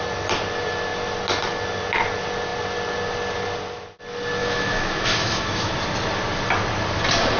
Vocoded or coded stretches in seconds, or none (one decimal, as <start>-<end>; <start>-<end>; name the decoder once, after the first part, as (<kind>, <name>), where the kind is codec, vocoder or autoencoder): 4.4-5.7 (autoencoder, DAC-VAE)